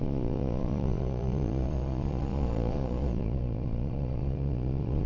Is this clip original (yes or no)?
no